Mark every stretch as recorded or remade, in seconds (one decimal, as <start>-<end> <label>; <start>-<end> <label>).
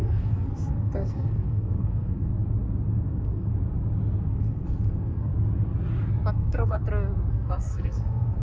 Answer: 0.0-2.3 remade; 2.3-3.1 recorded; 3.1-3.5 remade; 3.5-4.3 recorded; 4.3-5.3 remade; 5.3-6.3 recorded; 6.3-6.8 remade; 6.8-7.3 recorded; 7.3-8.4 remade